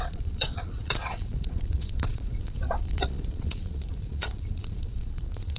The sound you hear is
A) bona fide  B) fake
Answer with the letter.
B